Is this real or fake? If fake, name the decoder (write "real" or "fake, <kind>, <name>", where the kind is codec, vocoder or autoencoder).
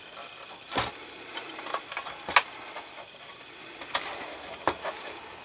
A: real